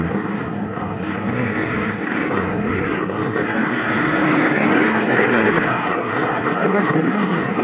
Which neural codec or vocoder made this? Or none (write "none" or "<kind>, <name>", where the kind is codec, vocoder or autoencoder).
codec, SNAC